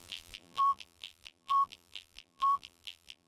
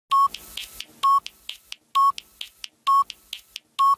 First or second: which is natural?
second